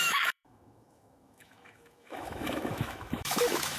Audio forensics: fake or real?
fake